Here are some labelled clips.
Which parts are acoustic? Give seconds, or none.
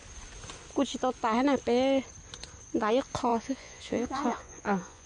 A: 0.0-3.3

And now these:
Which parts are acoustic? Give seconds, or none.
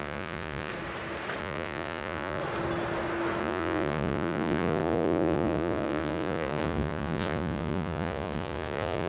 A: 0.7-1.4; 2.4-3.4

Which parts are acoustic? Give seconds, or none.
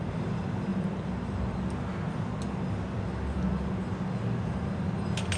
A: 0.0-5.4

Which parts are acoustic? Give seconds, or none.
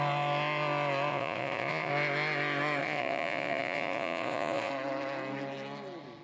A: 0.0-1.1; 1.9-2.8; 4.7-6.2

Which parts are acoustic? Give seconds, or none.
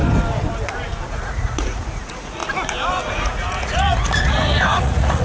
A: 0.0-1.1; 2.4-3.1